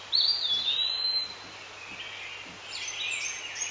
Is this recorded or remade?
recorded